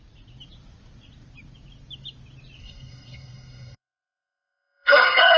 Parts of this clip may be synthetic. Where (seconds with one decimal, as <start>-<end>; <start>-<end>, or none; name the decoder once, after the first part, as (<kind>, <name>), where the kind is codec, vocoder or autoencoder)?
2.6-5.4 (codec, SNAC)